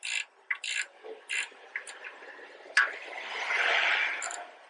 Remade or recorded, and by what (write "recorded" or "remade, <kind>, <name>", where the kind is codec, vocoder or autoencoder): remade, vocoder, BigVGAN v2